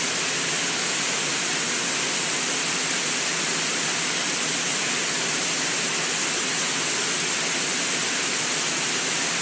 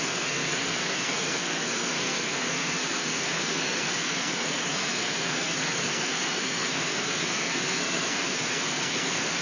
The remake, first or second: second